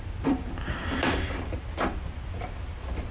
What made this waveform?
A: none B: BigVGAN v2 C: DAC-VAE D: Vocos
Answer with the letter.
B